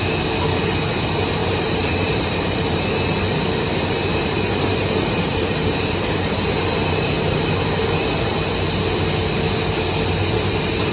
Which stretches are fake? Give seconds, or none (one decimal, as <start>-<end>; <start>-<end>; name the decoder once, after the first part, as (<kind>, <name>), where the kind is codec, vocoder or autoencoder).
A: 1.4-2.8 (vocoder, BigVGAN v2); 4.1-7.3